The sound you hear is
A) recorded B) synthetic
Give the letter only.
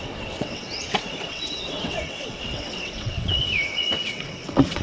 B